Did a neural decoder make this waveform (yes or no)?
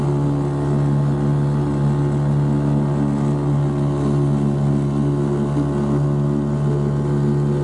no